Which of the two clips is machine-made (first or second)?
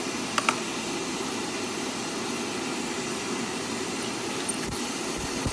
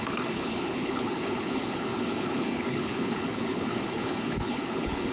second